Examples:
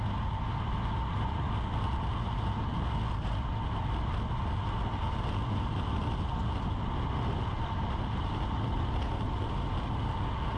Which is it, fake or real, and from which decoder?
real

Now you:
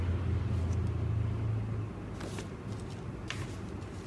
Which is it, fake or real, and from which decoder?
real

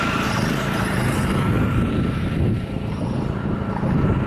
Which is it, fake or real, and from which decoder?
fake, vocoder, BigVGAN v2